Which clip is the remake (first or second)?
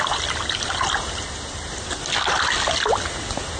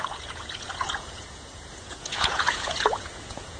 second